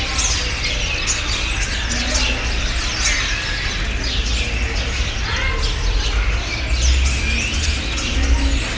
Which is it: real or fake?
real